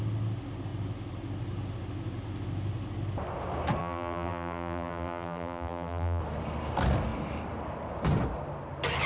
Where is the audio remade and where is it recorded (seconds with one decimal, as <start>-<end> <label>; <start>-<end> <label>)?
0.0-3.8 recorded; 3.8-6.2 remade; 6.2-9.1 recorded